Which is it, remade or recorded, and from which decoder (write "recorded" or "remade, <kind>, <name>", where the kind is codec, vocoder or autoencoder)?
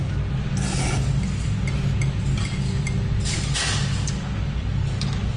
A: recorded